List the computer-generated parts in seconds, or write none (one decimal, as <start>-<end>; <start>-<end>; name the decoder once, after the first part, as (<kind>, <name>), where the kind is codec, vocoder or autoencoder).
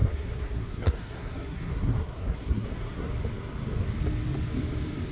0.0-3.1 (codec, SNAC)